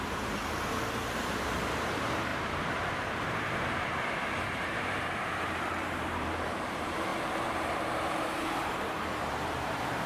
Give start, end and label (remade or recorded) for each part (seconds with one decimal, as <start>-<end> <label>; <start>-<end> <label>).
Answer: 0.0-10.1 remade